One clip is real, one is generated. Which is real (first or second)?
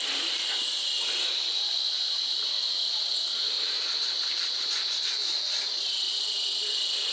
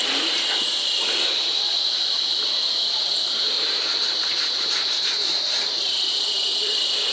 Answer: first